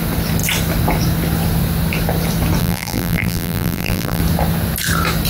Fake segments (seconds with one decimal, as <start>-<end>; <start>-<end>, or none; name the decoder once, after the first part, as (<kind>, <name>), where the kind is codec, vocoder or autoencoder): 2.6-4.2 (vocoder, BigVGAN v2)